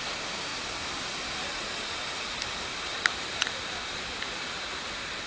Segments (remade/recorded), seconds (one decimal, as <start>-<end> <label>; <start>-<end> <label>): 0.0-2.7 recorded; 2.7-4.0 remade; 4.0-5.3 recorded